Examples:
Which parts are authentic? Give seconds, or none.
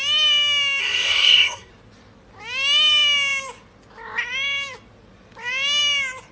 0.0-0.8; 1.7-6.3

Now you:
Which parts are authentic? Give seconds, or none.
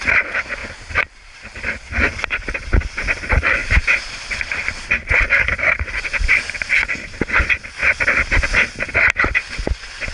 0.0-0.6; 1.4-3.6; 6.0-10.1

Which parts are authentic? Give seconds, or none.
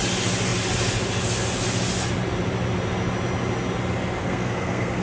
0.0-4.2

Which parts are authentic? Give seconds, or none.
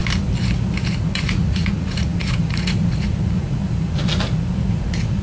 0.0-1.0; 3.6-4.7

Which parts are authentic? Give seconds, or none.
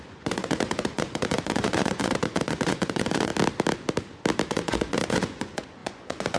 3.3-4.5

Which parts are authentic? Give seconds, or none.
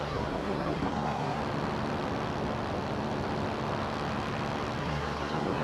1.4-4.8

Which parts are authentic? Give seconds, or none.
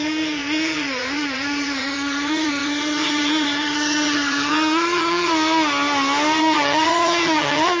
5.3-6.4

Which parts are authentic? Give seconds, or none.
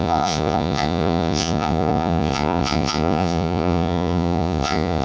none